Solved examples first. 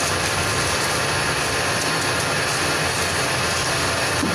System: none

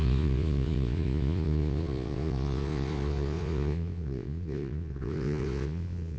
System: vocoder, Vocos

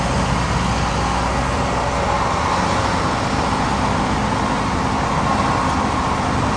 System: none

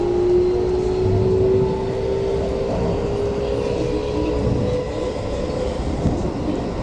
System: none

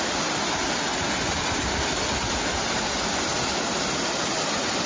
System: none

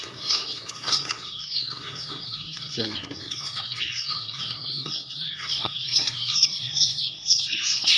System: codec, SNAC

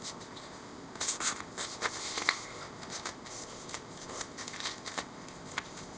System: codec, ZipCodec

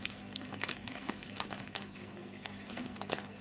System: codec, SNAC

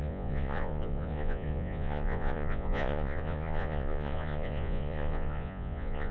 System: vocoder, Vocos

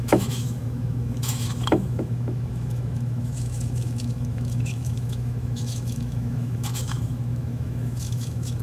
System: autoencoder, DAC-VAE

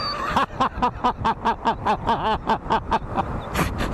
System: none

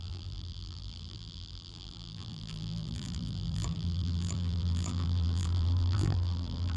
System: vocoder, BigVGAN v2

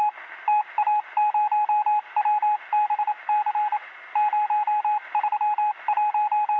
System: none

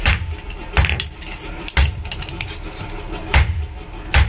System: none